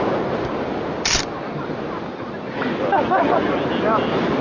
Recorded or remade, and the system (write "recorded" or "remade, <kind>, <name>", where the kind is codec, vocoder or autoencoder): recorded